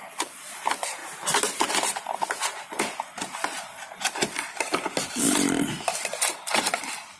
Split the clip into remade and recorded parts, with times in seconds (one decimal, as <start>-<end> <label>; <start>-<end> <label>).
0.0-7.2 recorded